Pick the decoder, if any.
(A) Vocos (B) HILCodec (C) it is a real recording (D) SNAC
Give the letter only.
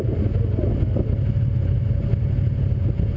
C